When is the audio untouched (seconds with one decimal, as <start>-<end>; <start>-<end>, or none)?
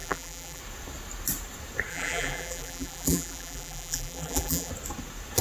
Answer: 0.6-1.9; 4.7-5.4